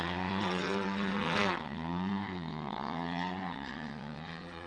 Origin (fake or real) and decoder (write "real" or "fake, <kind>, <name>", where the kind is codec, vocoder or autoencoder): fake, vocoder, WaveNeXt